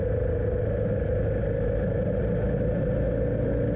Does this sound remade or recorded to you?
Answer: recorded